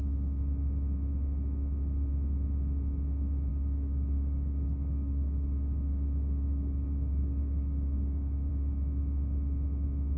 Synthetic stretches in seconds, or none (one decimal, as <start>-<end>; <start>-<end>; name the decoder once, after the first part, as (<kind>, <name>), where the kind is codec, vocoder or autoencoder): 3.5-8.5 (codec, DAC)

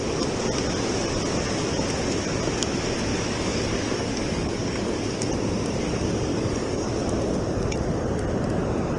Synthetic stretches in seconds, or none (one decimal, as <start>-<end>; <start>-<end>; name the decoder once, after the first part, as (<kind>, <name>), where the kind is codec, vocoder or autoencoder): 3.1-5.3 (codec, DAC); 6.3-6.9

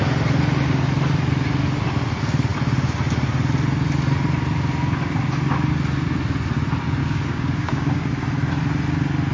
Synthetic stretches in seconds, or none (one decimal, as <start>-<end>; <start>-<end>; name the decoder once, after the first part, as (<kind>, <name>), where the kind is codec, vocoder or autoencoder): 7.0-8.1 (codec, DAC)

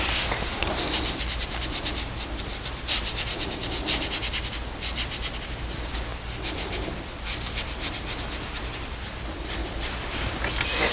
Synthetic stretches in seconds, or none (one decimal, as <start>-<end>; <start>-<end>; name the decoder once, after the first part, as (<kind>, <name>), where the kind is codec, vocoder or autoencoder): none

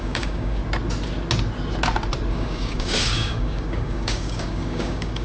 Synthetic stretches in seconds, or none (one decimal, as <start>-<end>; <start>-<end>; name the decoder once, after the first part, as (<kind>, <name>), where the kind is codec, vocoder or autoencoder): 0.0-0.6 (codec, DAC); 2.3-5.2